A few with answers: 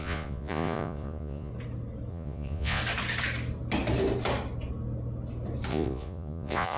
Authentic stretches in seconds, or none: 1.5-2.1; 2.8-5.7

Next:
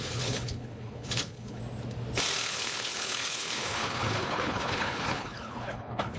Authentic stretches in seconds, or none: 1.6-2.5

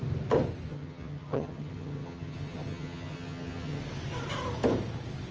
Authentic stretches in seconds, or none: 0.0-0.7; 3.8-5.3

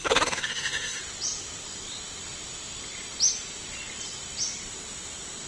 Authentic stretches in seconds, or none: 1.0-5.5

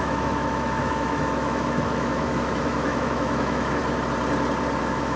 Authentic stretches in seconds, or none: 3.8-4.8

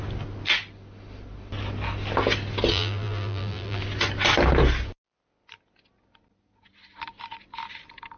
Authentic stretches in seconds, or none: 0.0-2.7; 3.8-8.2

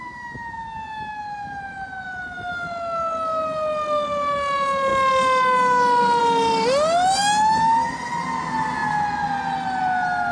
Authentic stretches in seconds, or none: 0.0-10.3

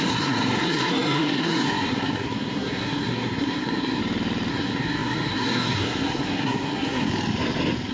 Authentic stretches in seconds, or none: 4.0-4.5; 7.1-7.9